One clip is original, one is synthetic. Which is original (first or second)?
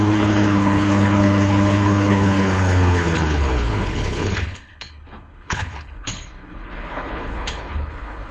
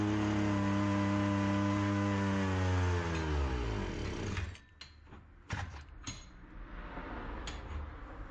second